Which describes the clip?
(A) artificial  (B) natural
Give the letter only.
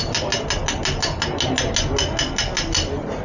B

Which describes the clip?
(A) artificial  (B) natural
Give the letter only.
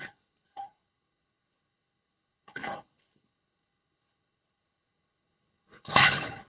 A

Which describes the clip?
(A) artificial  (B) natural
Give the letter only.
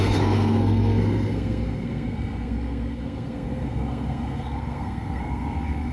A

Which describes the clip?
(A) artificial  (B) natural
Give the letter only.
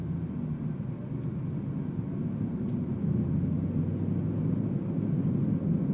B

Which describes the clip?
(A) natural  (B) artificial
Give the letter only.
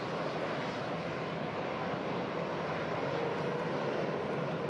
A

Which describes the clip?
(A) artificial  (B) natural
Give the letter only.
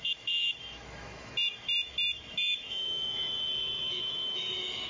A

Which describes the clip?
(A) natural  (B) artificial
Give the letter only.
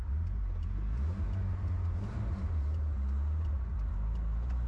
A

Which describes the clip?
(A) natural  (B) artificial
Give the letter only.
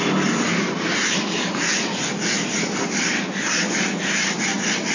A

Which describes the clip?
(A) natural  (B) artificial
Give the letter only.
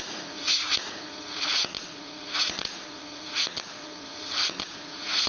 B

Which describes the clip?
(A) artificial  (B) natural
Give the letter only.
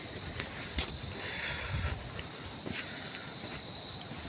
B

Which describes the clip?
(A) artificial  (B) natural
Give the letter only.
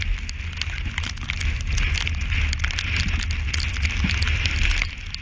B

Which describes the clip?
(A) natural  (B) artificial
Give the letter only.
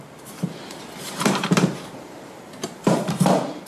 B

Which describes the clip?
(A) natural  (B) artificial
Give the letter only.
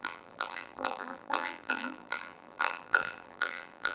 B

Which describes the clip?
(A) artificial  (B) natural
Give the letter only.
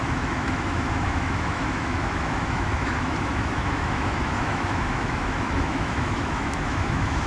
A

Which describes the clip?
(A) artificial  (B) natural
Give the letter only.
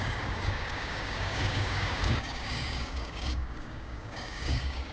A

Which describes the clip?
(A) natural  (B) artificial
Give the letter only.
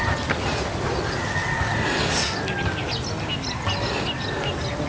A